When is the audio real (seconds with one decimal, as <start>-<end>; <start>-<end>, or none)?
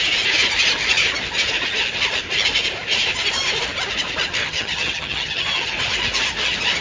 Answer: 0.0-4.4; 5.7-6.8